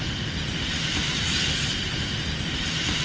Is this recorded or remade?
recorded